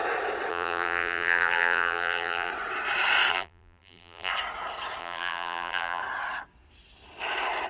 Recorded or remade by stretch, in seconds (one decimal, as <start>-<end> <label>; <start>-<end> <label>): 0.0-0.5 recorded; 0.5-2.5 remade; 2.5-3.3 recorded; 3.3-4.3 remade; 4.3-5.0 recorded; 5.0-6.0 remade; 6.0-7.7 recorded